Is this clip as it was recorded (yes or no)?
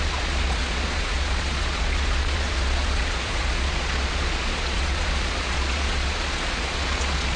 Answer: no